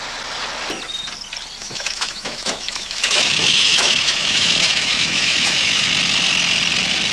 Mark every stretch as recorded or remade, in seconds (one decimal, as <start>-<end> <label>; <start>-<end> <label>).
0.0-1.6 recorded; 1.6-5.9 remade; 5.9-7.1 recorded